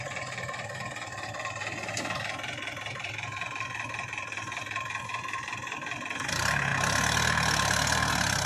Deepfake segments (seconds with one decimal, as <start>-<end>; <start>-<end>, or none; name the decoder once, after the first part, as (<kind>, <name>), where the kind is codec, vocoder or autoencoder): none